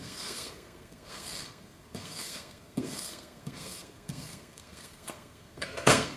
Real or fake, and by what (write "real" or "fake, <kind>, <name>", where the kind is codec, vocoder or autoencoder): fake, codec, SNAC